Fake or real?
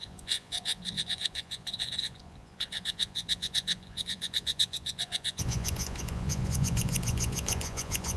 fake